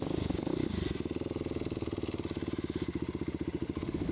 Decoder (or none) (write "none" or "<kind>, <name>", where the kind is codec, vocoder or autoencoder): none